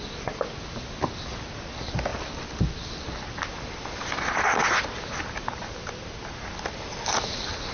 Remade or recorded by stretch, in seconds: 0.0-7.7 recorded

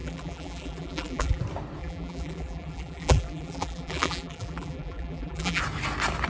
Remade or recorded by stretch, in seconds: 0.0-1.4 remade; 1.4-1.8 recorded; 1.8-5.6 remade; 5.6-6.3 recorded

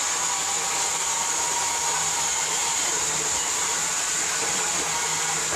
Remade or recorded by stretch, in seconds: 0.0-2.6 recorded; 2.6-4.6 remade; 4.6-5.6 recorded

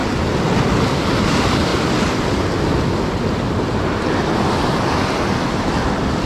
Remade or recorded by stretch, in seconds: 0.0-6.3 recorded

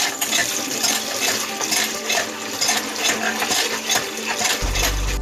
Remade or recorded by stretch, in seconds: 0.0-5.2 remade

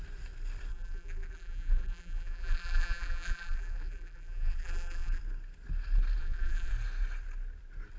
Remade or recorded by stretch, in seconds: 0.0-0.7 recorded; 0.7-5.2 remade; 5.2-6.2 recorded; 6.2-6.7 remade; 6.7-8.0 recorded